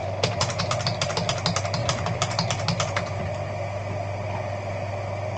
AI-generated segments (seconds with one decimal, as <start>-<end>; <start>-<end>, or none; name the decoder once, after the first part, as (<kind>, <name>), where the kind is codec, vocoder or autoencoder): 0.0-0.6 (vocoder, BigVGAN v2); 1.8-2.8